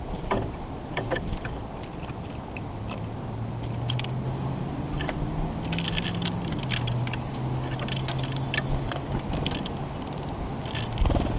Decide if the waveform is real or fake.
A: real